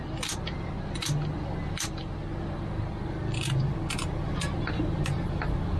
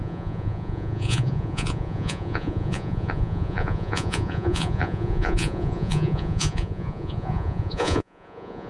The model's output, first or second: second